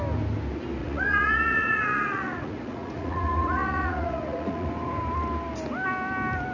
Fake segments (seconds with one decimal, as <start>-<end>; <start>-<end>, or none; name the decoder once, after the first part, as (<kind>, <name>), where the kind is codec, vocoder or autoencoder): 0.8-4.7 (vocoder, Vocos)